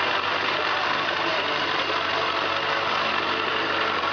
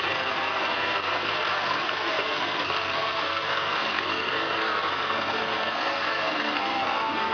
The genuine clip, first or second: first